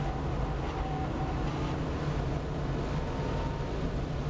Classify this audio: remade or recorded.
recorded